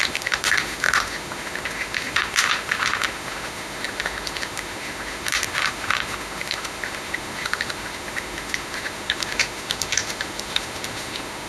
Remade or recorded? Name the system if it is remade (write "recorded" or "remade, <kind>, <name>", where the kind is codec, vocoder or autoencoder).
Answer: remade, autoencoder, DAC-VAE